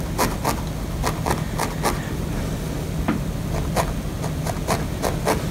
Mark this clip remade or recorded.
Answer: recorded